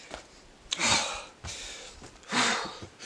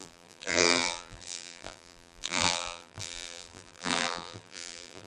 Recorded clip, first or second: first